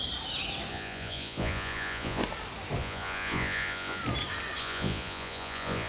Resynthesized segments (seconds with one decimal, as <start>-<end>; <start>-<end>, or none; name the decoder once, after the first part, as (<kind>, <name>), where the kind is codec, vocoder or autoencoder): 0.7-2.2 (vocoder, Vocos); 2.8-4.0; 4.6-5.9